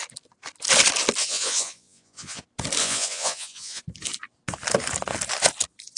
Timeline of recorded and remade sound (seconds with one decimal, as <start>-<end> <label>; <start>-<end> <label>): 0.0-1.2 recorded; 1.2-2.4 remade; 2.4-2.8 recorded; 2.8-3.8 remade; 3.8-6.0 recorded